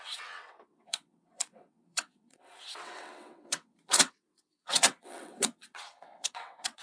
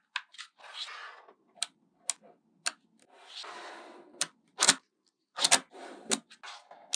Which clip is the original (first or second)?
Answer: second